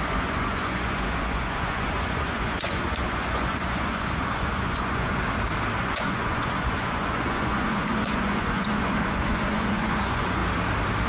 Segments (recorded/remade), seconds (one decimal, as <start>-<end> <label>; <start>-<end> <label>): 0.0-5.2 remade; 5.2-5.8 recorded; 5.8-10.4 remade; 10.4-11.1 recorded